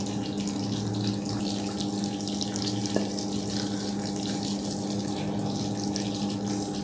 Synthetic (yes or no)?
no